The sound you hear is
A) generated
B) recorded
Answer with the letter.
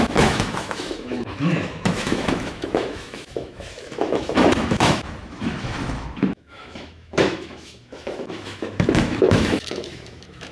A